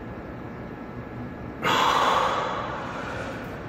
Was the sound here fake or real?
fake